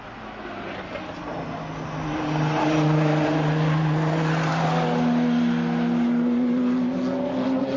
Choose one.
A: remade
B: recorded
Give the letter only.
B